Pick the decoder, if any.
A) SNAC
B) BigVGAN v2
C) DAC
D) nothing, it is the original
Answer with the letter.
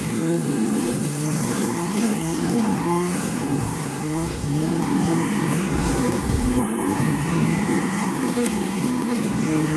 A